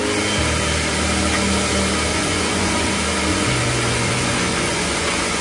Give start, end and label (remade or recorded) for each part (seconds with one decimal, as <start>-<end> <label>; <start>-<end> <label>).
0.0-2.1 recorded; 2.1-2.9 remade; 2.9-3.3 recorded; 3.3-5.4 remade